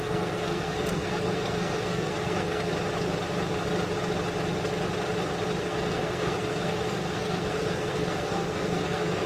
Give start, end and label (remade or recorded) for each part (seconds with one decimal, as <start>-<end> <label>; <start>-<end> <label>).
0.0-2.7 remade; 2.7-5.6 recorded; 5.6-9.3 remade

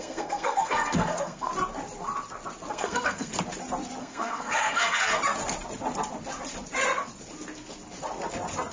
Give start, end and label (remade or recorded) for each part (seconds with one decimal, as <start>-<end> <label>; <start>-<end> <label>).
0.0-1.5 remade; 1.5-2.7 recorded; 2.7-3.3 remade; 3.3-4.0 recorded; 4.0-5.2 remade; 5.2-8.7 recorded

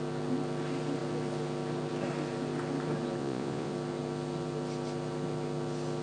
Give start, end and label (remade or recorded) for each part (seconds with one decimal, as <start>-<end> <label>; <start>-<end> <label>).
0.0-3.2 recorded; 3.2-3.7 remade; 3.7-6.0 recorded

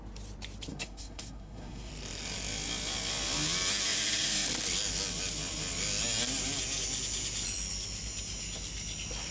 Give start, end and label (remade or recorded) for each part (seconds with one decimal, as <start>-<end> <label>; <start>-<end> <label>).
0.0-0.7 recorded; 0.7-1.9 remade; 1.9-9.3 recorded

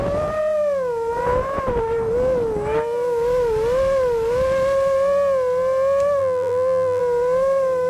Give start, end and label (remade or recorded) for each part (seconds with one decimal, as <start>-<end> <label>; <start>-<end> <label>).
0.0-6.2 recorded; 6.2-7.0 remade; 7.0-7.9 recorded

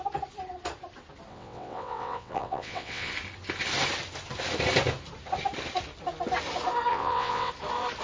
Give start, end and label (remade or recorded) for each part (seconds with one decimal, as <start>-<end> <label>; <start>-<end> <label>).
0.0-1.3 recorded; 1.3-3.1 remade; 3.1-6.9 recorded; 6.9-7.5 remade; 7.5-8.0 recorded